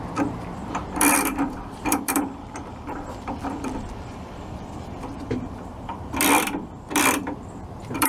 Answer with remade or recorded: remade